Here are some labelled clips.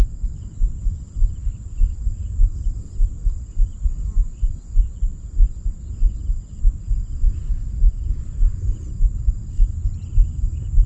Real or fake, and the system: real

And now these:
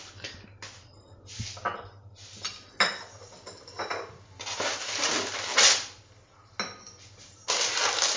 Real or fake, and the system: real